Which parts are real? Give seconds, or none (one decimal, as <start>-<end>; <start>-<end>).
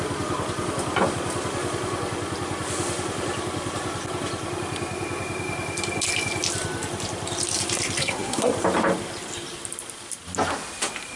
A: 0.0-8.0; 8.5-11.2